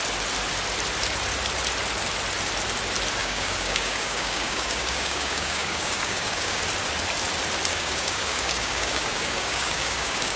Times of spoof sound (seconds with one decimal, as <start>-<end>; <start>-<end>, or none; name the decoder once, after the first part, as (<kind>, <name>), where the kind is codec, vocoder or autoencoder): 3.2-6.6 (codec, DAC); 7.7-10.4